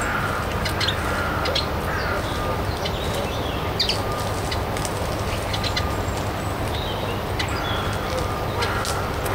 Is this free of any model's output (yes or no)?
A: yes